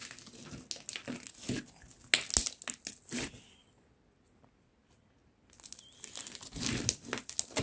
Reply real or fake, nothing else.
real